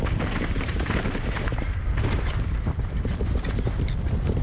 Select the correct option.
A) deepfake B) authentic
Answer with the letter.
A